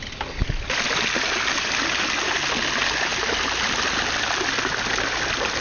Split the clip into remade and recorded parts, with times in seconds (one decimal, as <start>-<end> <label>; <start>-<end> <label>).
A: 0.0-5.6 recorded